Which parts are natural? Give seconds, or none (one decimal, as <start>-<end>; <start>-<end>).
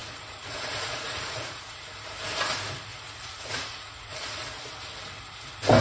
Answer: 1.9-2.9; 4.7-5.8